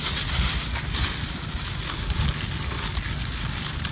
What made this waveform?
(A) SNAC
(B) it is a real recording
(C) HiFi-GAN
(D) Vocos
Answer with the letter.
B